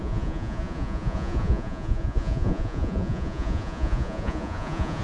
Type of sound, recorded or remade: remade